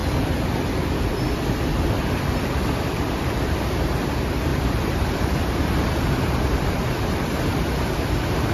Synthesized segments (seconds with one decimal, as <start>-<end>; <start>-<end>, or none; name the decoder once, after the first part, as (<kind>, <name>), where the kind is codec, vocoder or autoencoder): 4.5-7.5 (vocoder, BigVGAN v2)